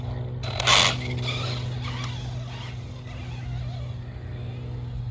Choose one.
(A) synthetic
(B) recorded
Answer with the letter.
B